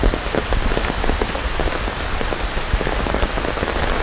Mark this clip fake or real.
real